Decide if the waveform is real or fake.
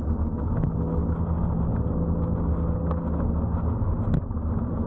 real